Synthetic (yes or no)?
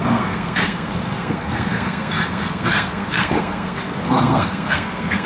yes